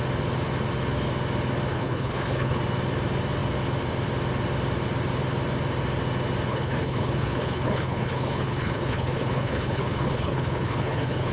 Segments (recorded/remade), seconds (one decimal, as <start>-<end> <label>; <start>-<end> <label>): 0.0-1.7 recorded; 1.7-2.6 remade; 2.6-6.5 recorded; 6.5-11.3 remade